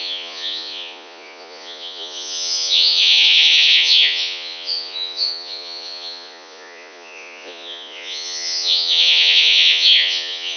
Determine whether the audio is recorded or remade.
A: remade